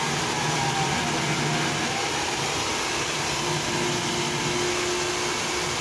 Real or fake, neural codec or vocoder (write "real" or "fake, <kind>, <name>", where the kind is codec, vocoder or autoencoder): real